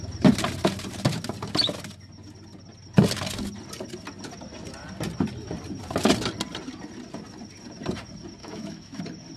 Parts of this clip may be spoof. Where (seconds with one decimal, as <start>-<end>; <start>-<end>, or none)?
8.4-9.0